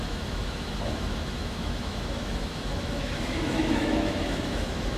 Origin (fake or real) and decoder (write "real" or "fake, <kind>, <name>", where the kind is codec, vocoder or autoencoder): fake, autoencoder, DAC-VAE